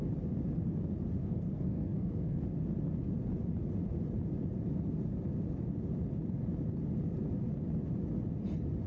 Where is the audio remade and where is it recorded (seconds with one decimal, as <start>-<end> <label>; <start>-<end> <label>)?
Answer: 0.0-1.2 recorded; 1.2-2.4 remade; 2.4-8.9 recorded